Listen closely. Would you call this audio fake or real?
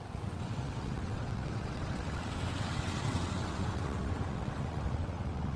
fake